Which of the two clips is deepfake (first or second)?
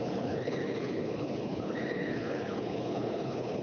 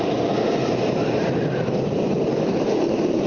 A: first